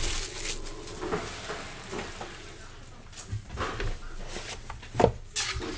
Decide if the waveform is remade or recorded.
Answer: recorded